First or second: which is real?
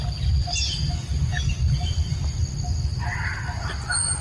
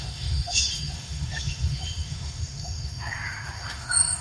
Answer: first